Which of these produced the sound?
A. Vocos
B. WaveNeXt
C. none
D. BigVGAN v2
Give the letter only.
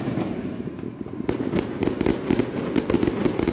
C